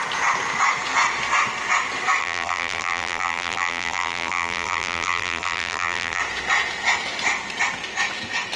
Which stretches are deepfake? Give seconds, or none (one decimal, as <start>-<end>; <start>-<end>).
2.2-6.2